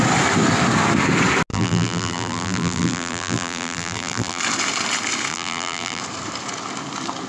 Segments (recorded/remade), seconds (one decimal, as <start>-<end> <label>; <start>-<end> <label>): 0.0-1.5 recorded; 1.5-4.4 remade; 4.4-5.3 recorded; 5.3-6.0 remade; 6.0-7.3 recorded

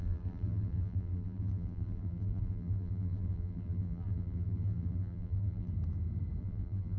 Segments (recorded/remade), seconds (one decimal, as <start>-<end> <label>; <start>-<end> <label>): 0.0-5.7 remade; 5.7-6.4 recorded; 6.4-7.0 remade

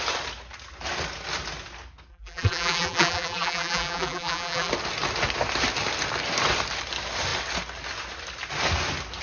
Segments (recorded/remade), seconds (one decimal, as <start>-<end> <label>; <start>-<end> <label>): 0.0-2.1 recorded; 2.1-4.7 remade; 4.7-9.2 recorded

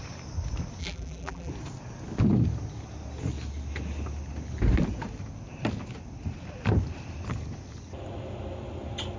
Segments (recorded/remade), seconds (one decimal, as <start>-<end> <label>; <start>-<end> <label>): 0.0-0.8 recorded; 0.8-1.5 remade; 1.5-9.2 recorded